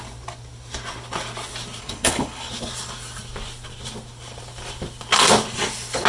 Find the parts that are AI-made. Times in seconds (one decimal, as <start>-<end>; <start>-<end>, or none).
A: 1.8-2.5

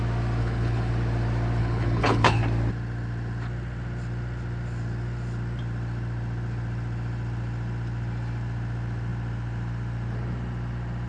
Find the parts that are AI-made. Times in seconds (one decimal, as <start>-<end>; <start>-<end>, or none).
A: 0.4-0.9; 1.6-2.4

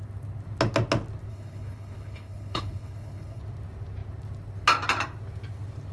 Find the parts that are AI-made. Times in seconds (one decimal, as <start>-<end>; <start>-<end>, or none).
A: 1.3-3.4

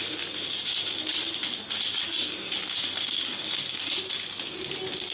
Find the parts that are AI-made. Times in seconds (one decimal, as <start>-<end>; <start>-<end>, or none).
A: none

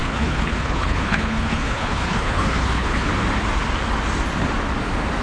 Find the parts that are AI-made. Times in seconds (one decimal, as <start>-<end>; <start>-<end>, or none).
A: 0.0-3.1

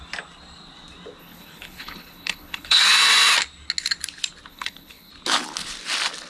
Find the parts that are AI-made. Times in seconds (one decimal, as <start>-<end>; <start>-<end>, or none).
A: 1.2-2.8; 4.5-5.1

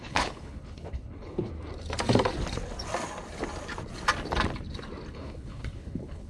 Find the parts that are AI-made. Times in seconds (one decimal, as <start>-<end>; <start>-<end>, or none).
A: 0.0-1.5; 5.1-6.3

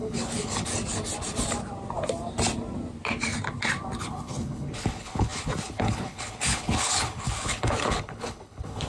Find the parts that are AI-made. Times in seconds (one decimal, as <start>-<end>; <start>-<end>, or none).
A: 0.0-0.7; 4.0-8.9